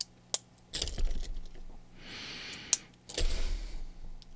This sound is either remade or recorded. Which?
recorded